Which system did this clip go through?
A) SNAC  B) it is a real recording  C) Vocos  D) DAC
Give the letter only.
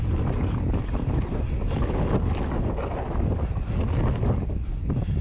B